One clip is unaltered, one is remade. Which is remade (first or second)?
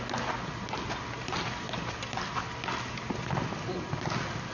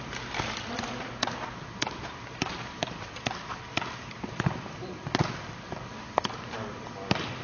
second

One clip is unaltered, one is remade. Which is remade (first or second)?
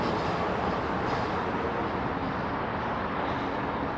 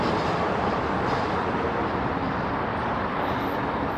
second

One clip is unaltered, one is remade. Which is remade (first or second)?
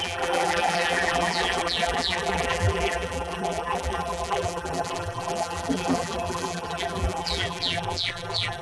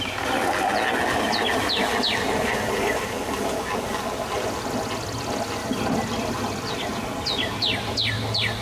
first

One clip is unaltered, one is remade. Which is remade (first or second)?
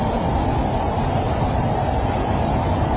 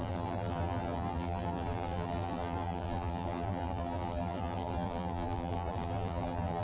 second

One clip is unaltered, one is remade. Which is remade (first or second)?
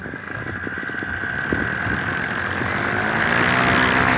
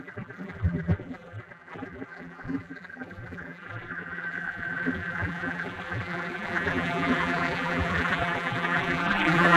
second